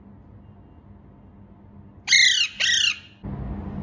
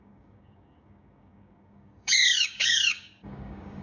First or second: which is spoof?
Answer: second